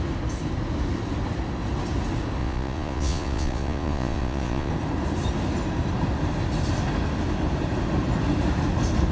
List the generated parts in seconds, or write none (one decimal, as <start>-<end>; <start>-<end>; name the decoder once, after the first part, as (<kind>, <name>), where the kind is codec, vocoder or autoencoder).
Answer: 2.4-4.7 (vocoder, Vocos)